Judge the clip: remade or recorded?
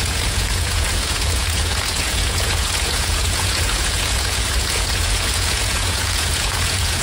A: remade